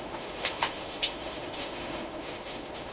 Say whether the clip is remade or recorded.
remade